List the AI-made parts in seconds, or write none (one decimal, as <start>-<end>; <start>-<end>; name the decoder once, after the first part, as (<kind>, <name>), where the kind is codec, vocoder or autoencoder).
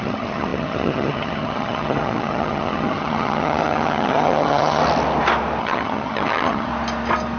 0.0-4.8 (vocoder, HiFi-GAN); 5.6-6.7